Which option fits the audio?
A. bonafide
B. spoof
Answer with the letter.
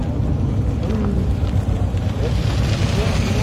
A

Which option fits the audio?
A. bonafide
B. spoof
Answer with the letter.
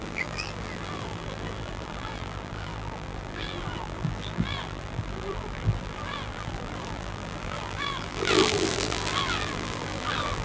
B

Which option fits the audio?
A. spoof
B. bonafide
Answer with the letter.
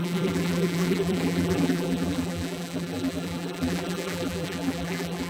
A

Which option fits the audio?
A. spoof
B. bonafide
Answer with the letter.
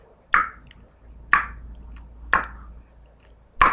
B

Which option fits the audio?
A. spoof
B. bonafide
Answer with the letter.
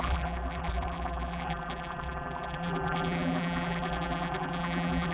A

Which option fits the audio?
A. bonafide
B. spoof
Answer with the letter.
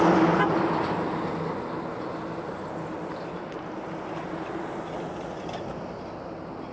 A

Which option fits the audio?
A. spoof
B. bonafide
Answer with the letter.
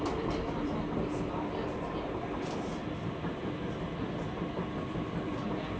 A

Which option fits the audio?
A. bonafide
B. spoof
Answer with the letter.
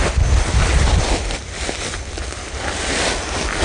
A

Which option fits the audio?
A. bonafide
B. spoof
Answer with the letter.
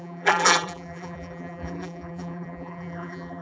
B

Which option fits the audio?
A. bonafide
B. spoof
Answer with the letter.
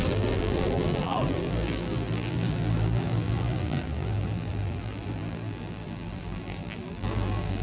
B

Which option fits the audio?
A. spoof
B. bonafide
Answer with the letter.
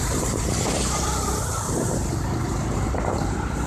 A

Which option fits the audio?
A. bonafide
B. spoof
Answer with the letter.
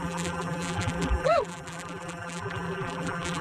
B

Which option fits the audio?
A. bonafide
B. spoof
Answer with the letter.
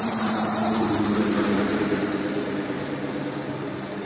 B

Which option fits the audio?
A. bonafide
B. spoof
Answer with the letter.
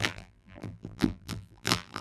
B